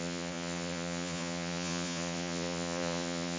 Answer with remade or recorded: remade